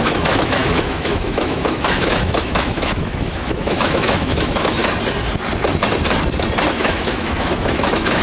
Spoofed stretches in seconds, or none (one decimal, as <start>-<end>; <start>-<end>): 0.0-4.8; 6.7-8.2